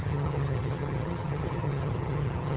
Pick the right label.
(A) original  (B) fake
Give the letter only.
B